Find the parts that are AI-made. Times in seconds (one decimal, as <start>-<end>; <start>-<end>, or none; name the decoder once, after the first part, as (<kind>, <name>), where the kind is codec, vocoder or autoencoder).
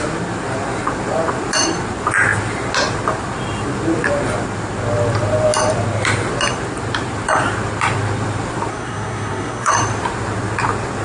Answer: 8.7-9.7 (codec, SNAC)